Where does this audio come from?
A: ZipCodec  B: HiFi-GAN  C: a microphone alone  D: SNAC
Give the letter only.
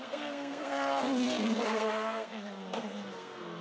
D